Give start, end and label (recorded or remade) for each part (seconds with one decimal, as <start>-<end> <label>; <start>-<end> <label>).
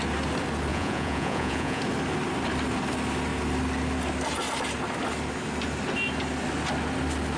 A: 0.0-0.7 recorded; 0.7-1.8 remade; 1.8-7.4 recorded